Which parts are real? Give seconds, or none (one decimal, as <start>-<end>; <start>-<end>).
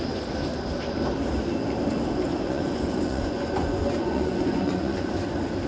0.0-2.3; 5.1-5.7